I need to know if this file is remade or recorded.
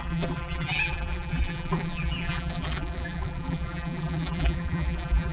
remade